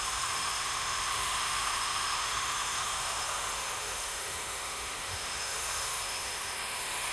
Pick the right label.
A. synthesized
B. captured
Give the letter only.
A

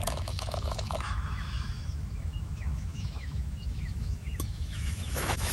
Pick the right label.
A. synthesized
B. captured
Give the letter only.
A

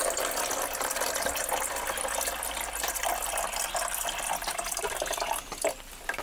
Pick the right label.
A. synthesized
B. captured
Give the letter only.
B